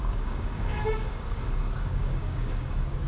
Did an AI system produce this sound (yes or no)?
yes